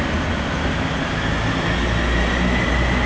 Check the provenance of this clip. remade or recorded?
recorded